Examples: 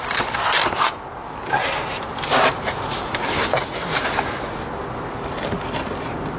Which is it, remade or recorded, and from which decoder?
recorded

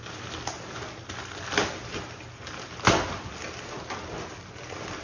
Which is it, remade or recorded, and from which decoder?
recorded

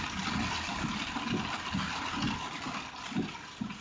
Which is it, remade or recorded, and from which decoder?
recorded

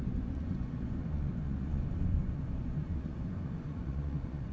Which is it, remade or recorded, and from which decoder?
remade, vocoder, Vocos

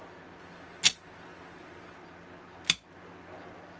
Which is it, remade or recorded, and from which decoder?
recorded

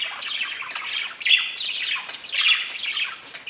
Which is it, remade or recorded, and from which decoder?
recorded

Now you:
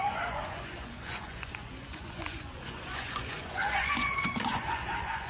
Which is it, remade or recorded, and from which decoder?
remade, vocoder, Vocos